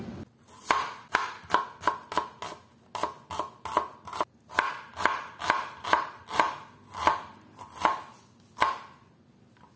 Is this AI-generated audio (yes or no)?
no